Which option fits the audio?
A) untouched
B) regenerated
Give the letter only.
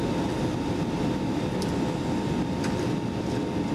A